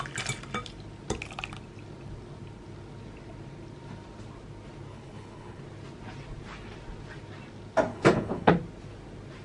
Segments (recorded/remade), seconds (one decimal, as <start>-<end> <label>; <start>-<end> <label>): 0.0-4.9 recorded; 4.9-5.6 remade; 5.6-7.9 recorded; 7.9-8.5 remade; 8.5-9.4 recorded